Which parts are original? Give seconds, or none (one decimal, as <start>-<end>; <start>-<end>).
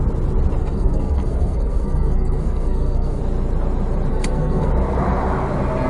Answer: 0.0-0.6; 3.2-4.1; 4.7-5.9